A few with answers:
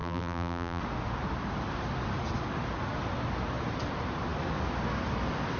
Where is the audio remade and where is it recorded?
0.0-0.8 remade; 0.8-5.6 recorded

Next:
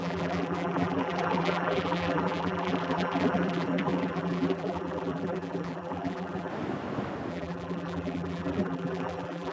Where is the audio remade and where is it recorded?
0.0-6.5 remade; 6.5-7.3 recorded; 7.3-9.5 remade